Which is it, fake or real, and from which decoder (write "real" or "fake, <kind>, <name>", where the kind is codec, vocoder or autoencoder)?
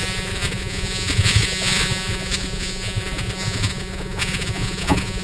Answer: fake, vocoder, Vocos